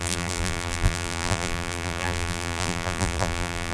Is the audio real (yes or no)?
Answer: no